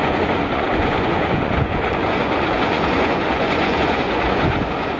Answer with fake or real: fake